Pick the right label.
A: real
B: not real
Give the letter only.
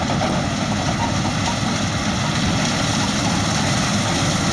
A